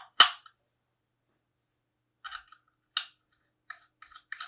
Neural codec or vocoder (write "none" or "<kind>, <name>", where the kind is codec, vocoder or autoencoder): none